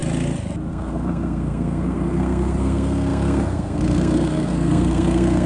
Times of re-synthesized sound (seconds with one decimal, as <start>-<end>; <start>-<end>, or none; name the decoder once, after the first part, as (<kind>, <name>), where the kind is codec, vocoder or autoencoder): 0.7-5.5 (codec, SNAC)